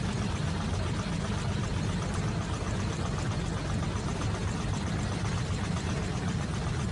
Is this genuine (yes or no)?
yes